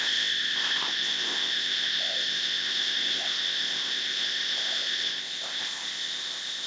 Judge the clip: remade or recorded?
remade